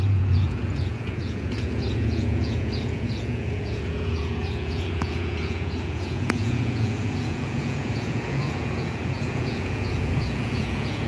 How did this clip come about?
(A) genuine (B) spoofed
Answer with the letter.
B